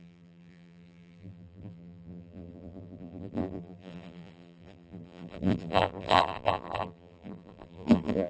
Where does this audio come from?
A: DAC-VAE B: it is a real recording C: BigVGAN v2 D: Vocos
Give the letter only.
C